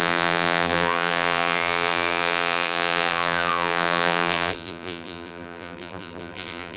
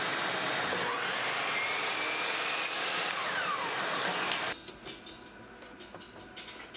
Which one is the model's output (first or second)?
first